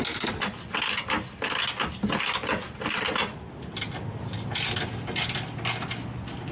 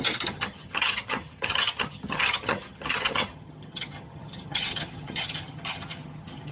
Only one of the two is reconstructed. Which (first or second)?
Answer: second